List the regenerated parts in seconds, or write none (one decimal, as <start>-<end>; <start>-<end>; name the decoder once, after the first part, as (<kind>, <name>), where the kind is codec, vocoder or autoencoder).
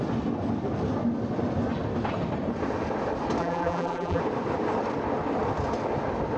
3.4-4.2 (vocoder, BigVGAN v2)